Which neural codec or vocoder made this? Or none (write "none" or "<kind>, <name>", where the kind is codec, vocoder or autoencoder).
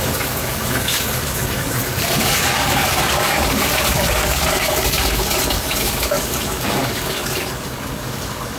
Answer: codec, DAC